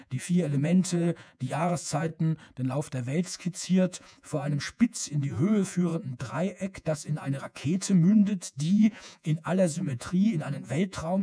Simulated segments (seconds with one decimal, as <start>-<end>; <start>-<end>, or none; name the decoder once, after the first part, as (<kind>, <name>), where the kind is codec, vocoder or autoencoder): 0.0-2.1 (vocoder, Vocos); 3.2-11.2